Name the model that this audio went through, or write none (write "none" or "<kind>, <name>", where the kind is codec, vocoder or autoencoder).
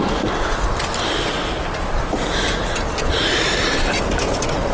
none